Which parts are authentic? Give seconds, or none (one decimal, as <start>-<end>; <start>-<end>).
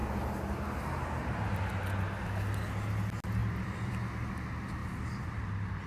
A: 0.0-3.4; 3.9-4.8; 5.5-5.9